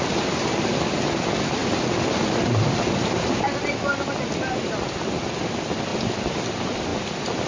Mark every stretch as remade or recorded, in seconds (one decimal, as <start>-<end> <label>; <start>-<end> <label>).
0.0-7.5 recorded